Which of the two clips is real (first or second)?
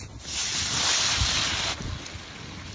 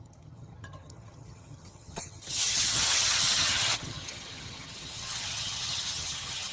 first